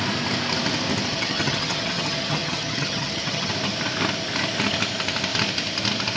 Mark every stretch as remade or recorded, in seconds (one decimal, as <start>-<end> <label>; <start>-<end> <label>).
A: 0.0-1.1 recorded; 1.1-3.5 remade; 3.5-6.2 recorded